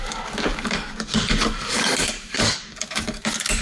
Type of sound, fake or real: fake